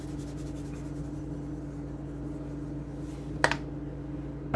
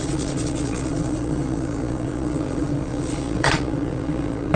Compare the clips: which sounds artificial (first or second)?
second